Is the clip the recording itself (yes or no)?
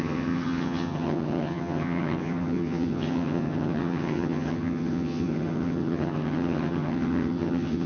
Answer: no